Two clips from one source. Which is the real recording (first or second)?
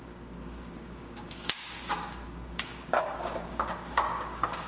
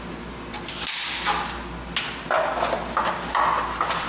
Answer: second